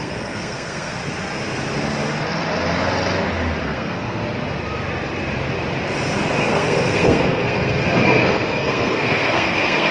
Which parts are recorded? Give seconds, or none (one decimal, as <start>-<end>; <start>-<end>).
1.0-3.6; 4.2-6.4